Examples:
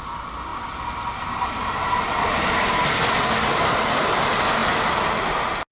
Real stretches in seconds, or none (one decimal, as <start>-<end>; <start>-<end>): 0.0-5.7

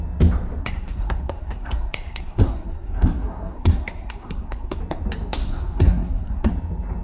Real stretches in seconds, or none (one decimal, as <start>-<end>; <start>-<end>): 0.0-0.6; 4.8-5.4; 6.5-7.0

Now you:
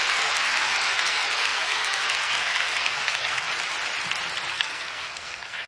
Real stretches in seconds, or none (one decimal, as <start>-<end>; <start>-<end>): 3.5-4.5